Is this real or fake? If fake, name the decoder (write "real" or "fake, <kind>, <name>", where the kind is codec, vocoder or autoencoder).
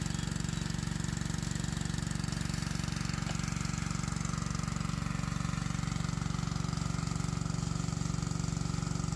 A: real